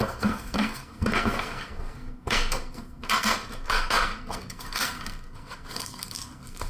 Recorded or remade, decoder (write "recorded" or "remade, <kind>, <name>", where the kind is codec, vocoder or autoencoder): remade, codec, SNAC